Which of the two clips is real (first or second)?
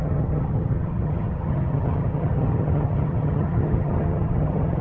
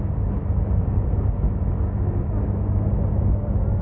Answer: second